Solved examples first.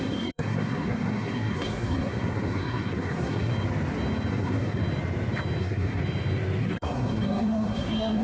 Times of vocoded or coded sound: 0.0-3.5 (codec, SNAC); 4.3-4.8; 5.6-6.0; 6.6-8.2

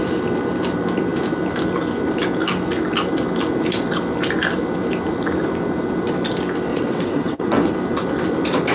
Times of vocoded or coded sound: 6.7-7.7 (vocoder, WaveNeXt)

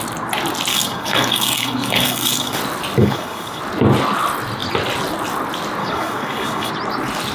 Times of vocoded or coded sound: 0.7-2.6 (codec, DAC); 3.0-3.6; 5.8-6.7

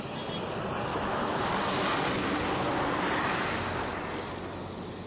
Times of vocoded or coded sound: 0.9-1.4 (autoencoder, DAC-VAE)

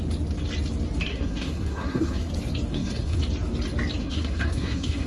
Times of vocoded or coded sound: 1.1-2.3 (codec, SNAC); 2.7-3.2; 4.0-5.1

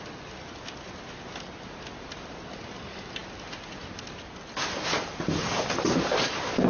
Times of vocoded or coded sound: none

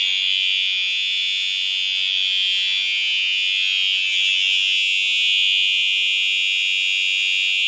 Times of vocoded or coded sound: none